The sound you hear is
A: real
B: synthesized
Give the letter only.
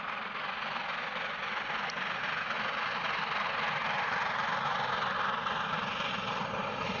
A